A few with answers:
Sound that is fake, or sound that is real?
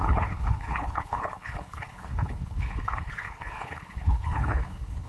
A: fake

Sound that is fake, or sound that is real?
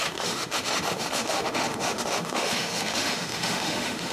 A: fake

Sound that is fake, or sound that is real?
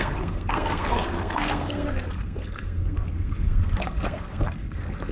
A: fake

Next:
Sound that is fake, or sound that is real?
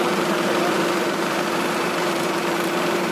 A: fake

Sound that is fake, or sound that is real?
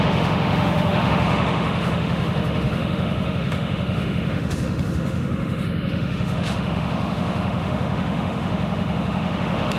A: fake